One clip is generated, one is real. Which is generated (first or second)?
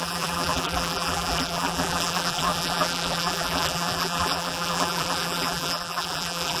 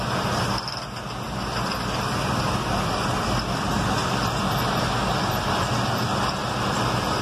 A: first